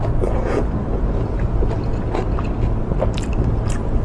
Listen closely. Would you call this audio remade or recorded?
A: recorded